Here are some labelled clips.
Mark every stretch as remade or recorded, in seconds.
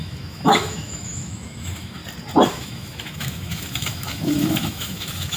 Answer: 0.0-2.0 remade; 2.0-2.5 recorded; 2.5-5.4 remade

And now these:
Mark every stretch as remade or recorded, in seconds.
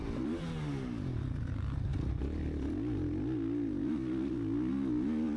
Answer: 0.0-5.4 recorded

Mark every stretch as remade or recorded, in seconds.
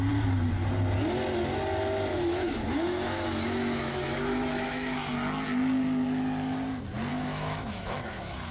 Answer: 0.0-2.1 recorded; 2.1-5.1 remade; 5.1-7.1 recorded; 7.1-8.5 remade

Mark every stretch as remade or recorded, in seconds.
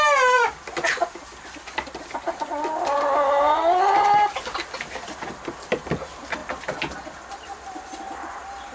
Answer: 0.0-8.7 recorded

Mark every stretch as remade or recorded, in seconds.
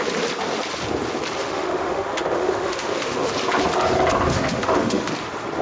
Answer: 0.0-1.4 recorded; 1.4-3.3 remade; 3.3-4.3 recorded; 4.3-5.1 remade; 5.1-5.6 recorded